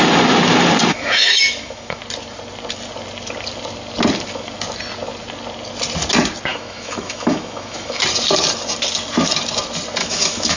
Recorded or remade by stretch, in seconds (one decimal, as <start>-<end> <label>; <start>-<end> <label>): 0.0-0.9 recorded; 0.9-2.0 remade; 2.0-6.5 recorded; 6.5-8.0 remade; 8.0-10.0 recorded; 10.0-10.6 remade